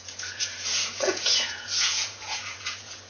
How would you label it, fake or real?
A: fake